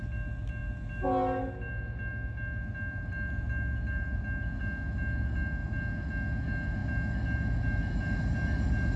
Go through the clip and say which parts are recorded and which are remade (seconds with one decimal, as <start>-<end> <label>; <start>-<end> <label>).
0.0-9.0 recorded

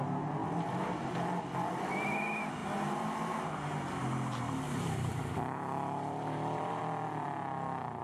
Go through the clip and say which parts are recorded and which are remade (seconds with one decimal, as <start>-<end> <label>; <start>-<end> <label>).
0.0-2.6 recorded; 2.6-6.8 remade; 6.8-8.0 recorded

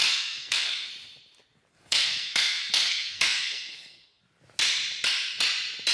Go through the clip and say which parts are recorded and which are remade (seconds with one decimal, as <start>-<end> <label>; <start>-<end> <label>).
0.0-0.9 remade; 0.9-1.7 recorded; 1.7-4.2 remade; 4.2-5.9 recorded

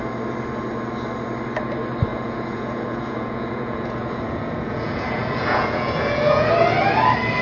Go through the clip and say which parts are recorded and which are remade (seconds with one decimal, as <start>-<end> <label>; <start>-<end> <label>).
0.0-2.1 recorded; 2.1-6.5 remade; 6.5-7.4 recorded

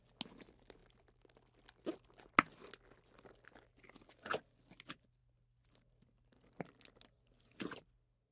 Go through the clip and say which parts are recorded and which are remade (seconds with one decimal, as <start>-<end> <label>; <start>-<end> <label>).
0.0-8.3 recorded

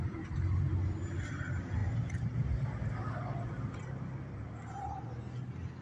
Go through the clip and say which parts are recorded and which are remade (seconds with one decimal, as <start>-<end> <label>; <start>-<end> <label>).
0.0-5.8 recorded